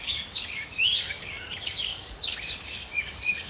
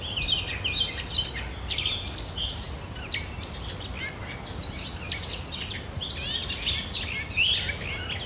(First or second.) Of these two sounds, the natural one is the second